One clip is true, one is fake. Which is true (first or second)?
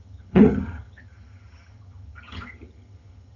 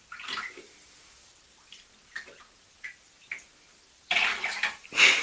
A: second